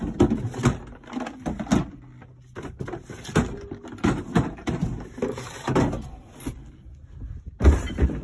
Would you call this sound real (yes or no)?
yes